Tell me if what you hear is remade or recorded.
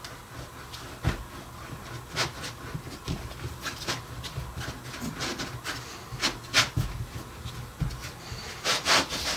recorded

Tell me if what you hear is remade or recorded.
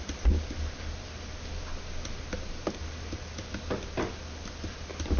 recorded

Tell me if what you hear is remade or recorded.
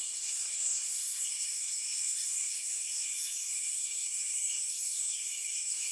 remade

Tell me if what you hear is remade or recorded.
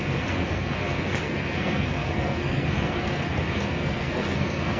remade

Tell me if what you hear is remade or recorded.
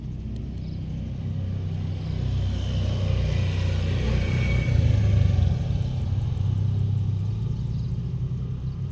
recorded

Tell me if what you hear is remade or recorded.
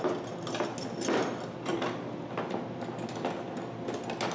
recorded